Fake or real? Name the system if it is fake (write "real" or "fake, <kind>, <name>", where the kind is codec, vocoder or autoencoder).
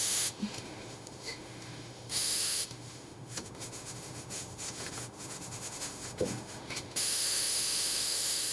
fake, autoencoder, DAC-VAE